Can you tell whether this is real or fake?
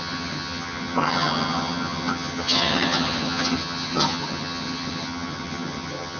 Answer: fake